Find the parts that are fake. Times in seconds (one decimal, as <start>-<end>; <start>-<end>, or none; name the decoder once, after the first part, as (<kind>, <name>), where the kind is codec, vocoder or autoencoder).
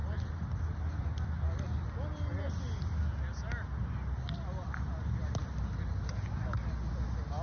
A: none